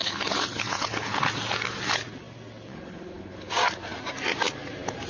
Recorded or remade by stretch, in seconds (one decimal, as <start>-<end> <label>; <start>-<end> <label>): 0.0-1.2 remade; 1.2-2.7 recorded; 2.7-3.5 remade; 3.5-5.1 recorded